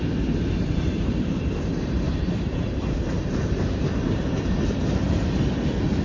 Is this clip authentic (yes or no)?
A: no